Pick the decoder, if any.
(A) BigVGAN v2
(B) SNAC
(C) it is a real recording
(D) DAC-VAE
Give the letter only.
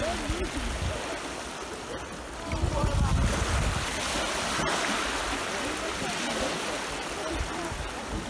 C